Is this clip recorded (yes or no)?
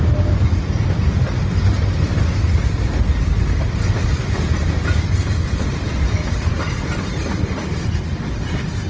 yes